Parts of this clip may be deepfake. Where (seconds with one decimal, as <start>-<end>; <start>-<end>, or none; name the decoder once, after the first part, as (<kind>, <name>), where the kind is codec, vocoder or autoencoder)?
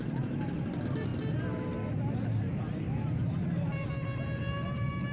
none